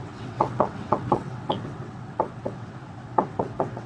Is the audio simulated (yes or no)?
yes